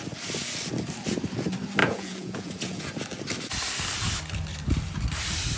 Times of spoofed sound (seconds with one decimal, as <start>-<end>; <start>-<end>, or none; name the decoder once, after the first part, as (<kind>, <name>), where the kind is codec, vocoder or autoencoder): 1.8-2.8 (vocoder, Vocos)